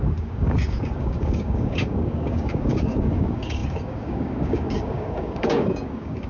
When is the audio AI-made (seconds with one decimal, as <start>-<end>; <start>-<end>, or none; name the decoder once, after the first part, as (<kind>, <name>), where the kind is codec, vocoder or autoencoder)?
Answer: 0.0-6.3 (codec, DAC)